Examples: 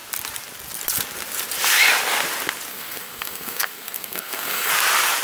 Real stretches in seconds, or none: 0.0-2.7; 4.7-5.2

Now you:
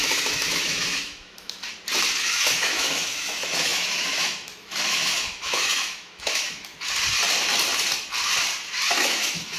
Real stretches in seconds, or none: 1.6-2.2; 6.7-8.9

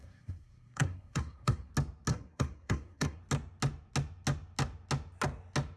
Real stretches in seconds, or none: 1.7-2.1; 3.2-5.8

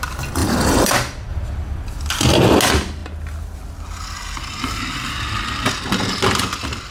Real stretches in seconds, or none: 0.0-0.4; 0.9-1.3; 2.6-6.9